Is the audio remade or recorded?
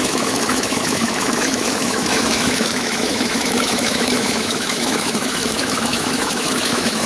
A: remade